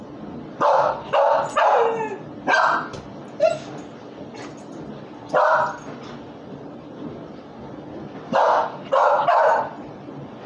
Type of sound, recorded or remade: recorded